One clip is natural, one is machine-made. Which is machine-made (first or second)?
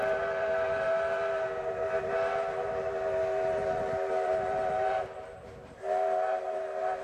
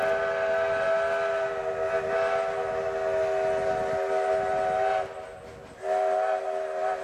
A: first